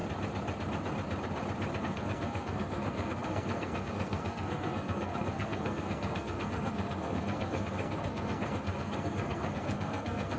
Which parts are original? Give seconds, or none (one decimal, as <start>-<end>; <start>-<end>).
0.0-1.8